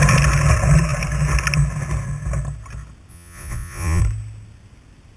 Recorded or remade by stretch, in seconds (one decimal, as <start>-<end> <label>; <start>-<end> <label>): 0.0-3.1 recorded; 3.1-4.0 remade; 4.0-5.2 recorded